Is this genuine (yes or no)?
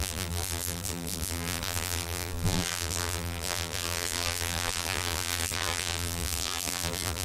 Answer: no